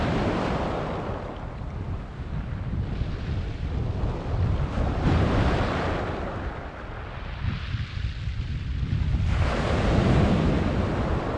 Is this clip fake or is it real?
real